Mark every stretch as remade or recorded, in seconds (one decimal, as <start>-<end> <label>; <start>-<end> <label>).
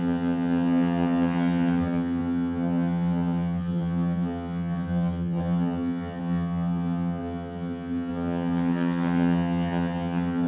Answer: 0.0-10.5 remade